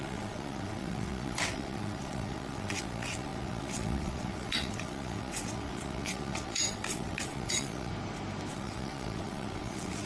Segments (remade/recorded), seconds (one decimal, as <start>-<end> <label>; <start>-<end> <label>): 0.0-7.9 remade; 7.9-8.5 recorded; 8.5-10.1 remade